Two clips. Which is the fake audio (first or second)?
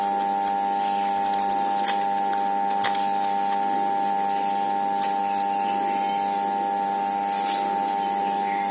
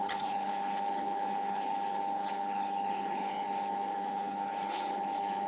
second